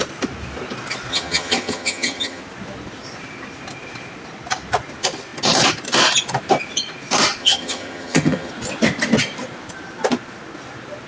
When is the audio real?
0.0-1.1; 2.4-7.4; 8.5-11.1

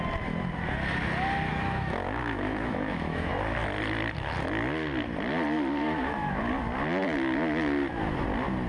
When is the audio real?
0.0-1.5; 3.3-5.8; 6.5-8.7